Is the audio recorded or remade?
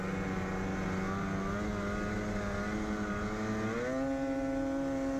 recorded